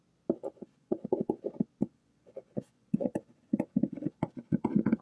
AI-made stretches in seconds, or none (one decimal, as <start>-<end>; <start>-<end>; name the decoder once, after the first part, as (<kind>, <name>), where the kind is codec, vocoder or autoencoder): 0.4-1.4 (vocoder, Vocos); 1.8-5.0